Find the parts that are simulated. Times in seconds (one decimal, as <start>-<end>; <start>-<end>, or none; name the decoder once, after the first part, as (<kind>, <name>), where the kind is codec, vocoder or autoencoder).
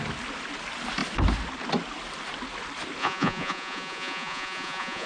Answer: 3.0-5.1 (vocoder, Vocos)